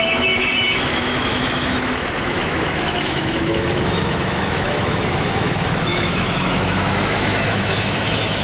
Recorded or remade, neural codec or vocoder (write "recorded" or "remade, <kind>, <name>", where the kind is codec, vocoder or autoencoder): remade, autoencoder, DAC-VAE